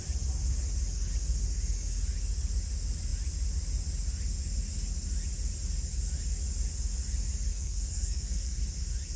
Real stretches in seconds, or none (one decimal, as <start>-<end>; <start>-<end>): 0.0-7.5; 8.6-9.2

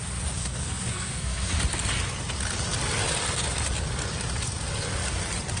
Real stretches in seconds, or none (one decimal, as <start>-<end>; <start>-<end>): 0.0-0.4; 1.5-5.6

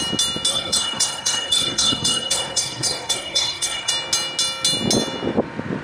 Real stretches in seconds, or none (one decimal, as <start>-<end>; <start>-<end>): 0.0-0.5; 3.9-5.8

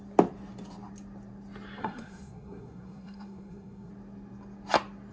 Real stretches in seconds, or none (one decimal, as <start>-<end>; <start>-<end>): 0.0-1.8; 3.9-5.1

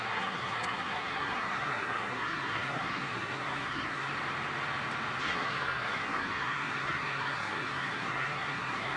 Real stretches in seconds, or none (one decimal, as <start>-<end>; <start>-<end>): 4.1-5.2

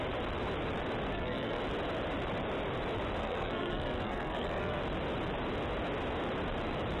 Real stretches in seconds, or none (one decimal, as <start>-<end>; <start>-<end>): 0.0-1.1; 1.6-3.2; 4.8-7.0

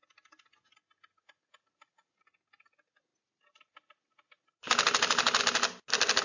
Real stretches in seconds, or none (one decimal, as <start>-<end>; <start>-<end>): 0.0-6.2